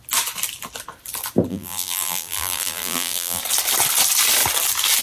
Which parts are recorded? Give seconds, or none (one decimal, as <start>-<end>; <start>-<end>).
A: 0.0-1.5; 3.4-5.0